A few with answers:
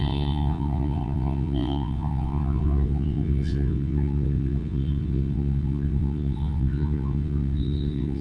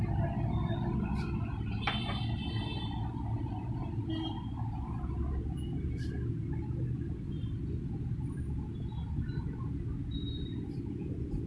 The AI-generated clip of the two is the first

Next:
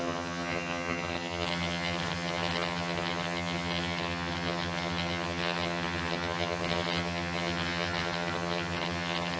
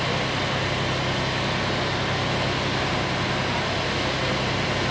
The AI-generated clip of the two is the first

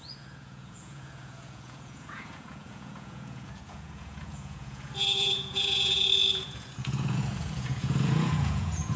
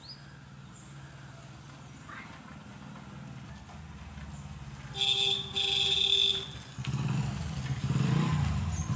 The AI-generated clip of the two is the first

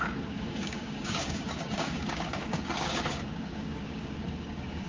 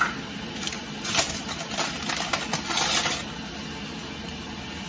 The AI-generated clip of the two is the first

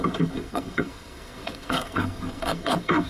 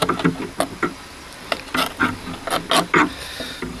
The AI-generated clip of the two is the first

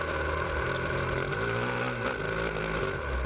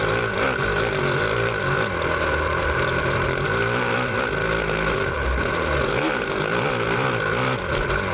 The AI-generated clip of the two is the second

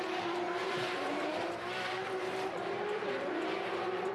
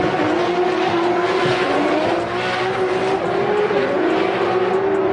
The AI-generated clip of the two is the first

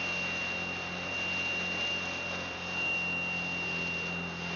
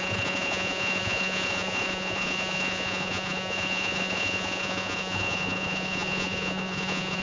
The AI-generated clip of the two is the second